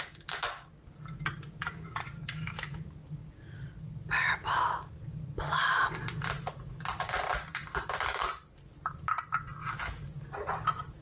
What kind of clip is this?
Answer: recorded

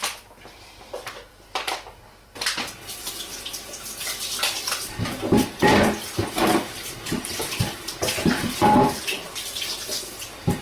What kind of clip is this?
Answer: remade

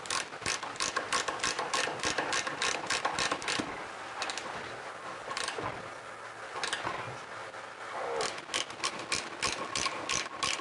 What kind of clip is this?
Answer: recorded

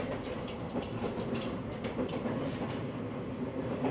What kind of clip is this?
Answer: remade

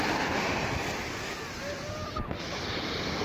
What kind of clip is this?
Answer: recorded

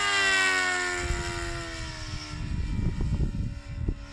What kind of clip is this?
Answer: recorded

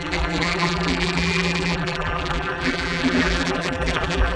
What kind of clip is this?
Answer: remade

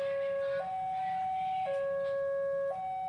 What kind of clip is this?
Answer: recorded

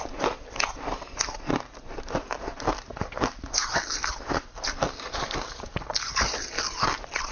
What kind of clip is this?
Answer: remade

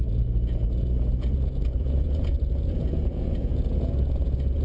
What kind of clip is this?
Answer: remade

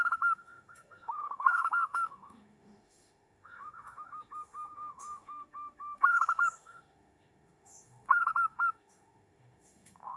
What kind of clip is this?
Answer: remade